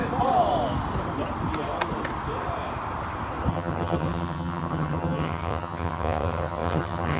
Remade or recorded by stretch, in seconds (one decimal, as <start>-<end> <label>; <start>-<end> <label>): 0.0-3.5 recorded; 3.5-7.2 remade